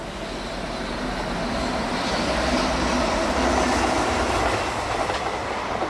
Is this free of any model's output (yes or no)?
yes